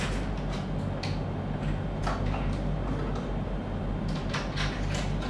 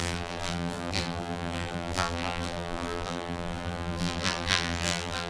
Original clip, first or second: first